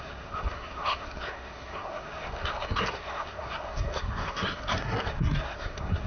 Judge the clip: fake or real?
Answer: fake